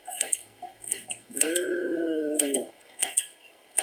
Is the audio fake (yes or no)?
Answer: yes